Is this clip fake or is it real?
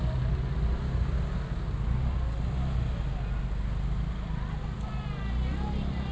real